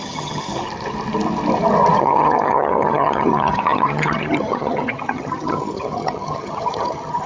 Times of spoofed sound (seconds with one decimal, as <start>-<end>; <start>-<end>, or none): 0.0-0.5; 2.0-7.3